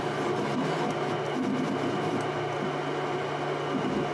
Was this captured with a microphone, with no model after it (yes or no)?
yes